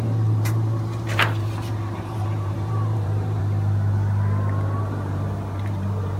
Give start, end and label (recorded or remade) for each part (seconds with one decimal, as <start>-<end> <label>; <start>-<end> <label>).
0.0-3.4 remade; 3.4-4.8 recorded; 4.8-6.2 remade